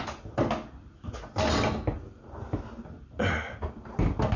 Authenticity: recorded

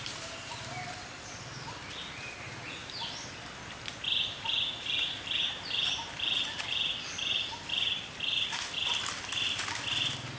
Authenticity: recorded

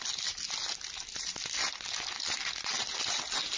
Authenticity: recorded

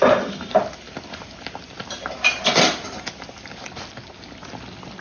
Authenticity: recorded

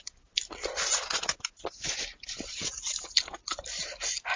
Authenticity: recorded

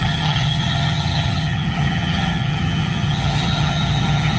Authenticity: remade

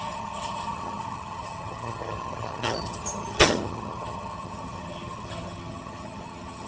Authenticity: remade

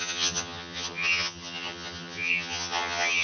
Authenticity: remade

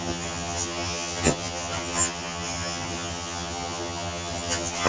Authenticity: remade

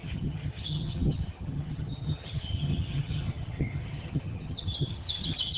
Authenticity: remade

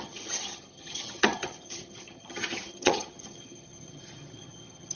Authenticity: remade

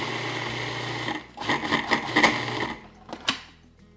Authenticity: recorded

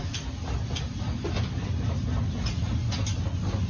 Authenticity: recorded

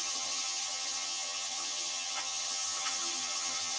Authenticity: remade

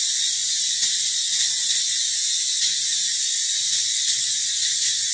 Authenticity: recorded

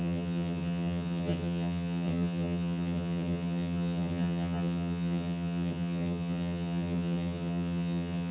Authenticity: remade